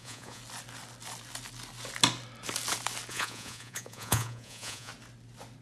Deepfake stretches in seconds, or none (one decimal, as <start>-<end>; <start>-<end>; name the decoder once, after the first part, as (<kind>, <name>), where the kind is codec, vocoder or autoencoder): 0.0-0.4 (vocoder, Vocos); 3.1-4.9